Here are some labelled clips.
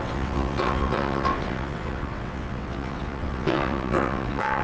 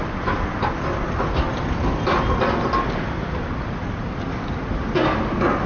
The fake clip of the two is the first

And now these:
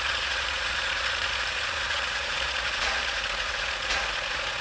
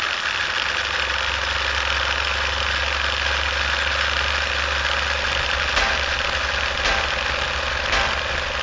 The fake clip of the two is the first